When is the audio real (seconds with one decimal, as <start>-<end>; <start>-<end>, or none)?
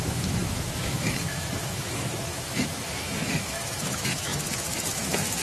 none